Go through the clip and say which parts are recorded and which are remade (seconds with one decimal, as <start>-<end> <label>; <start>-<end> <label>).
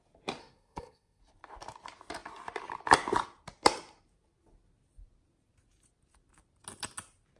0.0-0.4 recorded; 0.4-1.2 remade; 1.2-7.4 recorded